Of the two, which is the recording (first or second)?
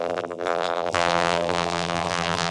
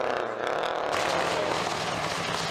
second